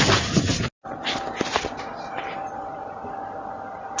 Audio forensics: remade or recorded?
recorded